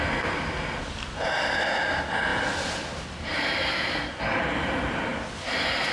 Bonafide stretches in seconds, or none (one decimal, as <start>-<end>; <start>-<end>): 5.1-5.9